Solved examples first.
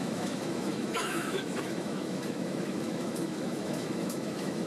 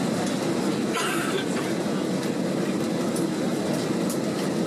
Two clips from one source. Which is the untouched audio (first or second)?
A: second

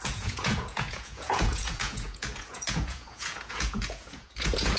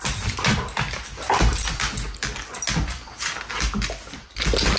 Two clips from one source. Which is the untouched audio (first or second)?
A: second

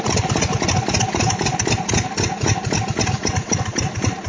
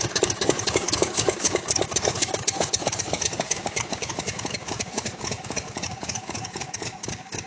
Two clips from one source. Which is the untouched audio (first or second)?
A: first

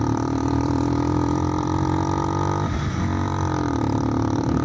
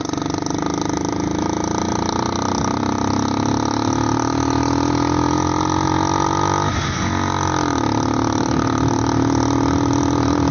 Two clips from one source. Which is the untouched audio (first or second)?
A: second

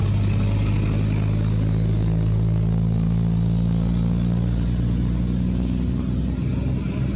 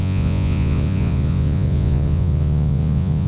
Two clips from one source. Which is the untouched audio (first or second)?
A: first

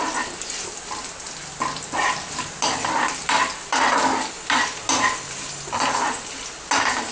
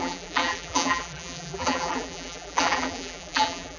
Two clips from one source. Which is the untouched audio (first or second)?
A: first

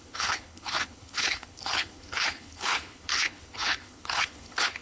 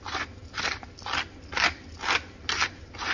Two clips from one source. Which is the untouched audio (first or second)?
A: second